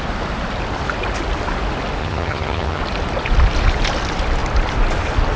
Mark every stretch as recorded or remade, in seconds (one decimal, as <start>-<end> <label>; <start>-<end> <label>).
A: 0.0-2.0 recorded; 2.0-2.8 remade; 2.8-5.4 recorded